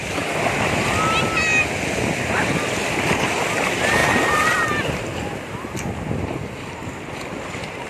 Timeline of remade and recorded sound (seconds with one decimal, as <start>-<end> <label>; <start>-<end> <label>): 0.0-7.9 recorded